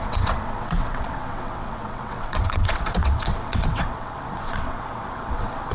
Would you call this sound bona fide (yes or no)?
no